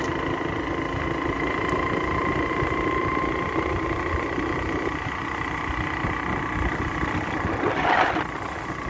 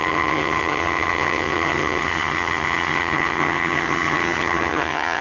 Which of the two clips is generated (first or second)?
second